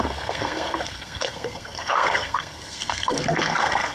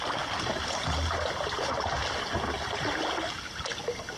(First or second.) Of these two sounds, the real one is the second